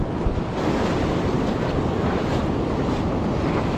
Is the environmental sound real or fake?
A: real